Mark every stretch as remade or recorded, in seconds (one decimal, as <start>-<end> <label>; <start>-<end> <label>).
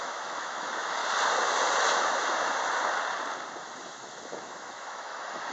0.0-1.0 remade; 1.0-3.6 recorded; 3.6-5.5 remade